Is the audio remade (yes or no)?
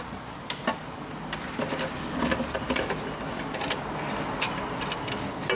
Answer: no